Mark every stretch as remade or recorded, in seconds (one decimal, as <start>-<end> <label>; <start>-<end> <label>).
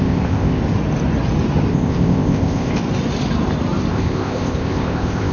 0.0-0.6 remade; 0.6-1.7 recorded; 1.7-2.8 remade; 2.8-3.9 recorded; 3.9-5.3 remade